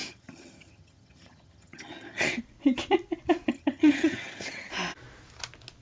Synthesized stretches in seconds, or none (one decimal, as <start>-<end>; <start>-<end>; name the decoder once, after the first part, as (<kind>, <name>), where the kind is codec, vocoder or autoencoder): 0.0-2.4 (vocoder, HiFi-GAN); 3.5-4.7